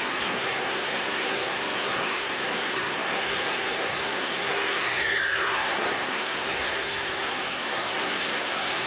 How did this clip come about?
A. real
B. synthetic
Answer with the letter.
B